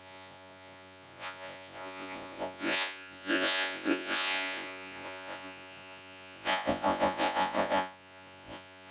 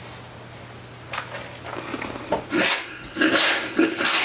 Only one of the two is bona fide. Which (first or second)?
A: second